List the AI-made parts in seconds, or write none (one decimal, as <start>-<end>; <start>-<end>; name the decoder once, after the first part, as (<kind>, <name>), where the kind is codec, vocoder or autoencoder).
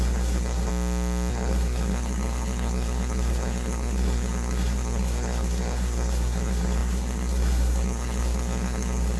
0.0-0.7 (codec, SNAC); 1.3-9.2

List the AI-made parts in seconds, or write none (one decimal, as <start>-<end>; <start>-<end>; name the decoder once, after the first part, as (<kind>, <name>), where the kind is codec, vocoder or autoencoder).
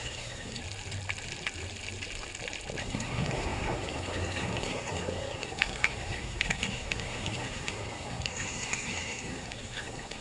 0.0-0.6 (codec, SNAC); 2.8-10.2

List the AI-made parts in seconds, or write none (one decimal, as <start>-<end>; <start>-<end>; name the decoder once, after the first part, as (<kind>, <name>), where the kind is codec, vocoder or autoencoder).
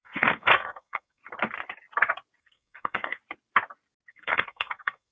0.0-1.2 (codec, SNAC); 2.4-3.2; 4.1-5.1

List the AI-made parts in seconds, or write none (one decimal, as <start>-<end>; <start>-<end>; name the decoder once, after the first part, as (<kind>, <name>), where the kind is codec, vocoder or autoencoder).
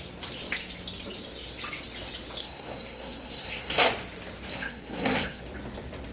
2.4-3.9 (codec, SNAC); 4.5-5.4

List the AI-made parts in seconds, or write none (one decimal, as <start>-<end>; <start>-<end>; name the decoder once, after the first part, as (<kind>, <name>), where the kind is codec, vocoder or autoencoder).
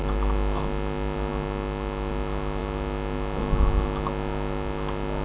none